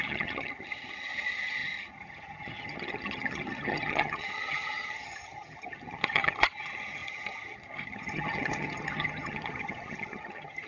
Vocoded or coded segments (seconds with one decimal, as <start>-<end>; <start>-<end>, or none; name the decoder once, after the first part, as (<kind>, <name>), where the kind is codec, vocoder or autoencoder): 0.0-10.7 (vocoder, HiFi-GAN)